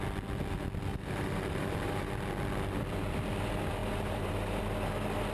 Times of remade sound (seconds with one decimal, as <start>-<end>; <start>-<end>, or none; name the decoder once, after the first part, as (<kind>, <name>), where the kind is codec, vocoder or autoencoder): 0.9-2.1 (vocoder, BigVGAN v2); 3.8-4.6